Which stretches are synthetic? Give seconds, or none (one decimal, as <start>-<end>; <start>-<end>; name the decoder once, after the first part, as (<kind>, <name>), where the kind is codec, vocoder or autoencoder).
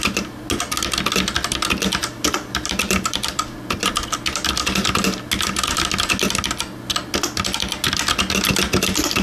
2.0-3.5 (vocoder, BigVGAN v2)